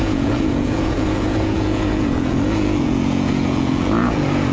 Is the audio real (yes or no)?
no